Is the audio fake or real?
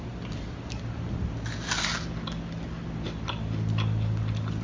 real